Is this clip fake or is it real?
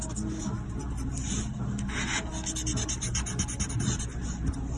real